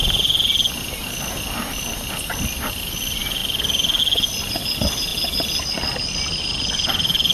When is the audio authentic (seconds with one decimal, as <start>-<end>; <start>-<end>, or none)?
0.0-7.3